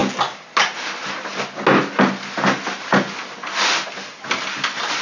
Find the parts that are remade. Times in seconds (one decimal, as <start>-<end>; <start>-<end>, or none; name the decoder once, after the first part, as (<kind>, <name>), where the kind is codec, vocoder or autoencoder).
none